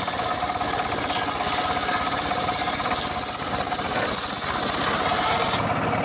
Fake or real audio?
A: real